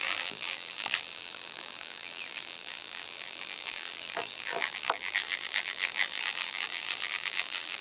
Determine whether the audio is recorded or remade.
remade